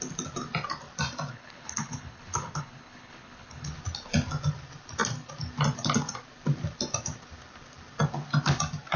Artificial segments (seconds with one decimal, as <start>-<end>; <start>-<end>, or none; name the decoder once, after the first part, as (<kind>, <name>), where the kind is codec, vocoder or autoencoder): 1.3-3.7 (codec, HILCodec)